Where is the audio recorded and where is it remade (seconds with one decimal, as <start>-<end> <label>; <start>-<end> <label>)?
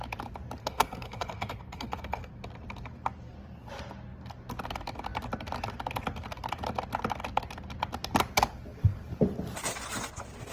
0.0-0.6 recorded; 0.6-2.3 remade; 2.3-10.5 recorded